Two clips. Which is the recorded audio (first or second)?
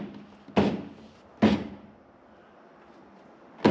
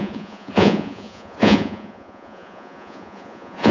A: first